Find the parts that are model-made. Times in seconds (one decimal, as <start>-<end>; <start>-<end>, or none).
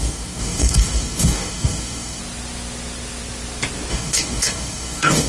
0.0-2.2; 3.9-5.3